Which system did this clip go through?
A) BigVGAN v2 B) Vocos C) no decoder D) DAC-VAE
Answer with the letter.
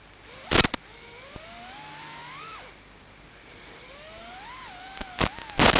C